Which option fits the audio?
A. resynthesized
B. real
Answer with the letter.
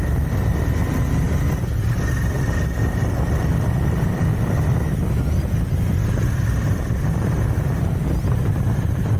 B